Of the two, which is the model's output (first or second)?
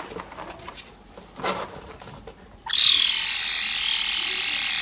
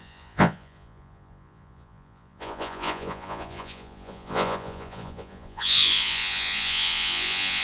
second